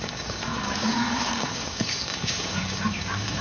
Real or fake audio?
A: fake